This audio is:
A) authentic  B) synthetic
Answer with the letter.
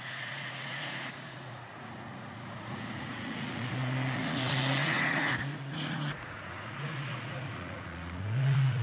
B